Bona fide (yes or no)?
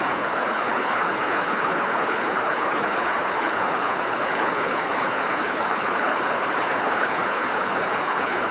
no